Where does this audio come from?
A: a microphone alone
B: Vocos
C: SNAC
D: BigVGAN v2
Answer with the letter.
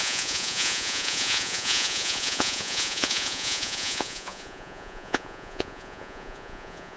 B